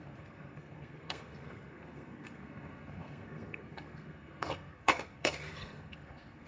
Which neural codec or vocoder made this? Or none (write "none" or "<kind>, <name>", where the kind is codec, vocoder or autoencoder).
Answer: codec, SNAC